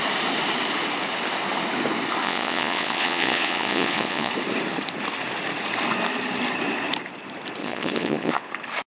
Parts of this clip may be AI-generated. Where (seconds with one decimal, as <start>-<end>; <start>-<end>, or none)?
2.2-4.3; 7.6-8.5